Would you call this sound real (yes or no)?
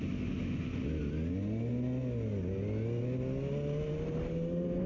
yes